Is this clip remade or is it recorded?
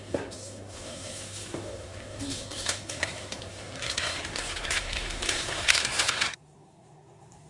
remade